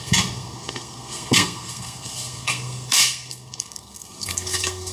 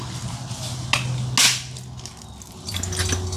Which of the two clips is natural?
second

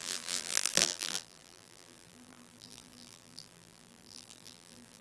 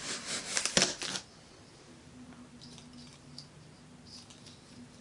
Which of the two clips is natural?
second